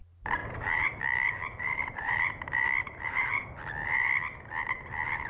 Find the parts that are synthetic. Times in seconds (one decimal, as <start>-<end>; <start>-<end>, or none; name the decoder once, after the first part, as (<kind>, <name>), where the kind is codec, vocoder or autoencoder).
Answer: 0.4-3.6 (vocoder, BigVGAN v2)